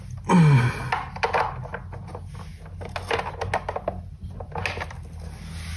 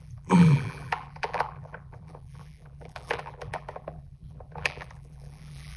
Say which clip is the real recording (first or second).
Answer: first